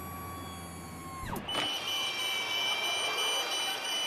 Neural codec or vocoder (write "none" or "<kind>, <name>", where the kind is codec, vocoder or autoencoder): none